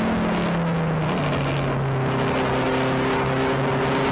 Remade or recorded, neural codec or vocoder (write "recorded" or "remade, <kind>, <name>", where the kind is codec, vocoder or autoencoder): recorded